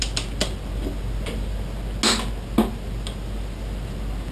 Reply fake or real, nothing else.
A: real